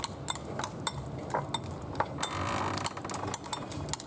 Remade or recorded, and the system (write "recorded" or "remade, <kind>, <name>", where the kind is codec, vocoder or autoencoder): recorded